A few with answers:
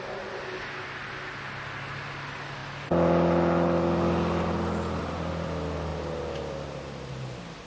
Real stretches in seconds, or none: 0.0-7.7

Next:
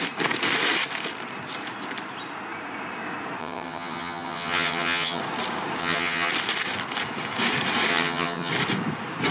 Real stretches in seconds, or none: 0.0-3.4; 5.2-5.8; 6.3-7.9; 8.5-9.3

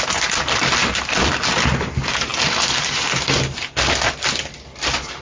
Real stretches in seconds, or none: 0.0-5.2

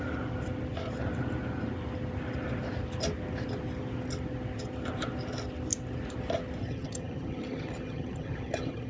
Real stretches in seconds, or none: 0.0-6.6

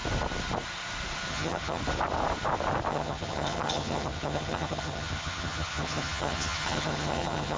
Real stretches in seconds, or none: 0.0-1.3; 1.8-2.9